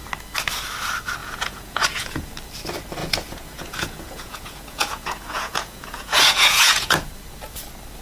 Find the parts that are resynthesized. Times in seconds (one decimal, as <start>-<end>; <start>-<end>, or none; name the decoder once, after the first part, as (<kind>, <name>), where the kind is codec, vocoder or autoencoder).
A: 1.2-2.3 (vocoder, Vocos); 3.0-7.1